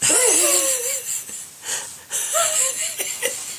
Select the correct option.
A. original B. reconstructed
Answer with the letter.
A